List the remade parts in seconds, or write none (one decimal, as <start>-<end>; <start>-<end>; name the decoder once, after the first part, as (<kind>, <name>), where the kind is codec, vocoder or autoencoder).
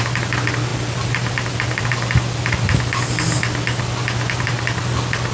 none